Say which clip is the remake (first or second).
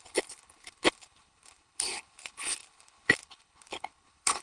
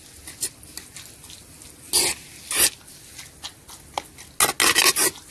first